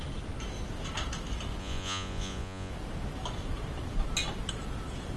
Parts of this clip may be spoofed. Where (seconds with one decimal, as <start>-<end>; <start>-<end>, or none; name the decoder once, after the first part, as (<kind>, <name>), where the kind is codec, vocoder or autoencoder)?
1.6-2.7 (vocoder, Vocos)